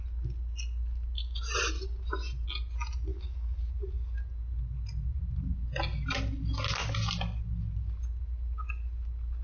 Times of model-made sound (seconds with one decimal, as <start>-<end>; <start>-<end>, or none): 3.1-3.6